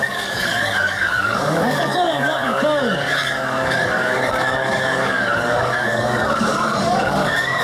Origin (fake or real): fake